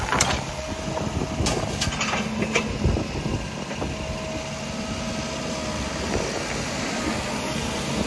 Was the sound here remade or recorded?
recorded